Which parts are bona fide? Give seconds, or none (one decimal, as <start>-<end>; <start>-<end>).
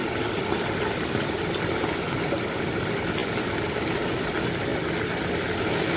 0.0-6.0